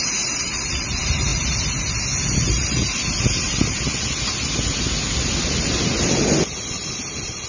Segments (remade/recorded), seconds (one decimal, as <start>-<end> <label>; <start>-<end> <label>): 0.0-7.5 recorded